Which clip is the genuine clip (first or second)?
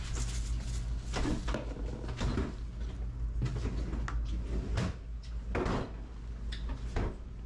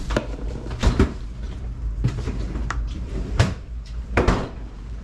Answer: first